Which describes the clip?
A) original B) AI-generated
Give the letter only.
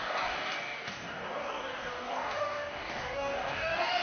B